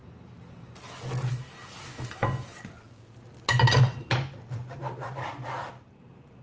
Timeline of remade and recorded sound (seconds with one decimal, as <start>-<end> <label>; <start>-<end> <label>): 0.0-6.4 recorded